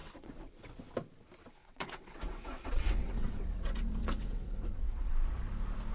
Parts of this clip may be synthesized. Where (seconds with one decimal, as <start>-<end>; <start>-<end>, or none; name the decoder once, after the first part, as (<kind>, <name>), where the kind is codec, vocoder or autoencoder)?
0.0-0.8 (vocoder, WaveNeXt); 1.6-5.1